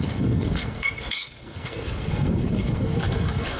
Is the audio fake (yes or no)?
yes